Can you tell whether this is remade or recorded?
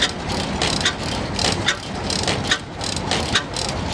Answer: recorded